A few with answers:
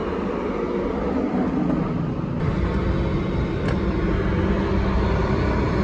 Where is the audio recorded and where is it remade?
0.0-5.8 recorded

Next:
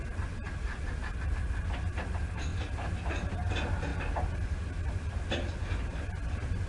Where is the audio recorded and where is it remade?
0.0-6.7 recorded

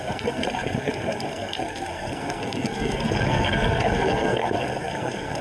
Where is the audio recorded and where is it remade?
0.0-5.4 remade

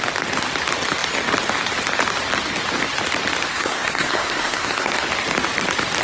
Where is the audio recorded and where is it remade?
0.0-3.5 recorded; 3.5-5.0 remade; 5.0-6.0 recorded

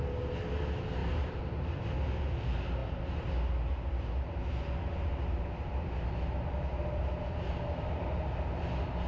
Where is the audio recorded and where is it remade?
0.0-9.1 recorded

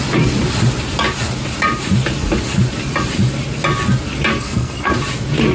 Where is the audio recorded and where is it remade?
0.0-4.3 recorded; 4.3-4.9 remade; 4.9-5.5 recorded

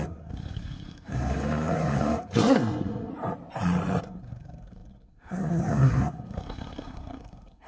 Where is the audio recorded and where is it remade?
0.0-3.1 remade; 3.1-4.0 recorded; 4.0-7.7 remade

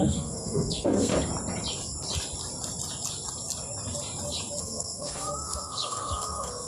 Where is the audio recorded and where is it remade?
0.0-1.1 remade; 1.1-4.6 recorded; 4.6-6.7 remade